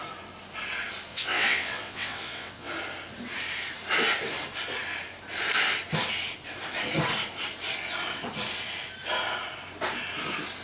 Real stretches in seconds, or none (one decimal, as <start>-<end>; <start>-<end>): 0.0-1.1; 2.7-10.6